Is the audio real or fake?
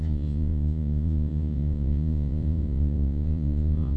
fake